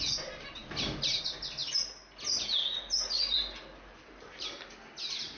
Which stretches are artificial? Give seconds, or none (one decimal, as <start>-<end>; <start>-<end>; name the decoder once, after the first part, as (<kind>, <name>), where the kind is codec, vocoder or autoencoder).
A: none